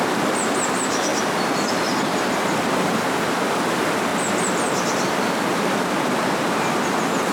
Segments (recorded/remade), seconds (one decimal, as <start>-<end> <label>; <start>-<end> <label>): 0.0-7.3 remade

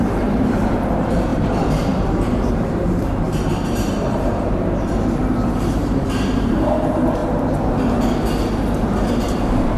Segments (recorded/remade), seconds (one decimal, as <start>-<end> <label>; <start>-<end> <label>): 0.0-7.2 remade; 7.2-9.2 recorded; 9.2-9.8 remade